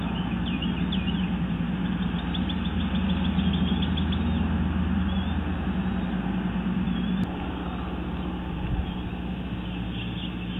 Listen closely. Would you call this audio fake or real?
real